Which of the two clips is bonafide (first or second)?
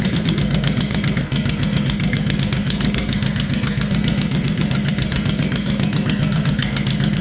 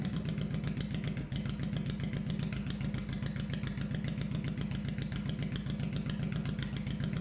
second